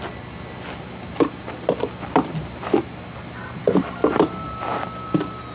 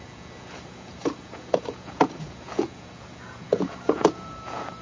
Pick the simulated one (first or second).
second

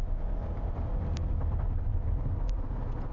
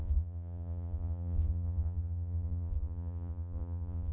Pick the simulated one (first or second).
second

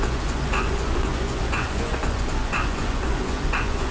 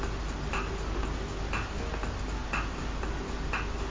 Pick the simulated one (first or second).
first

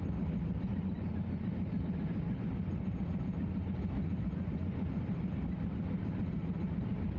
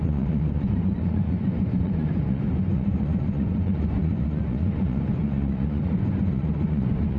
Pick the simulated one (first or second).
second